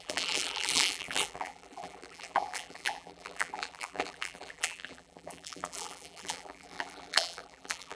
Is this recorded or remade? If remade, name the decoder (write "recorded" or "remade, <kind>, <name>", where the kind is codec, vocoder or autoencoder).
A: remade, vocoder, BigVGAN v2